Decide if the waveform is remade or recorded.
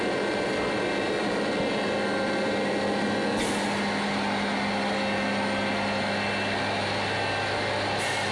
recorded